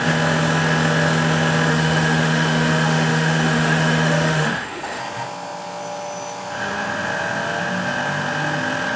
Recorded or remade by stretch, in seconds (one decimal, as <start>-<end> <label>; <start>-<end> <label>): 0.0-1.7 recorded; 1.7-5.0 remade; 5.0-9.0 recorded